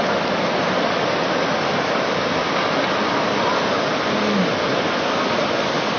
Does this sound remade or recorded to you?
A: recorded